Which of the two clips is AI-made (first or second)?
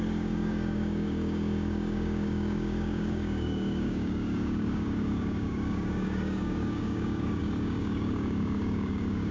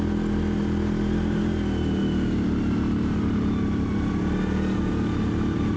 first